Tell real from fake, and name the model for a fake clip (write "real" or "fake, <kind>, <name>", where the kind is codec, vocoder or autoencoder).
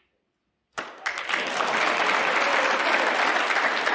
real